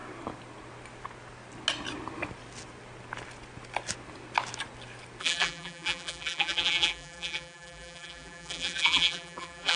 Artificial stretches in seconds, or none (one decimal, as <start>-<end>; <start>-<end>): 5.2-9.8